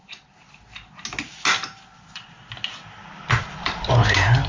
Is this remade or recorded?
recorded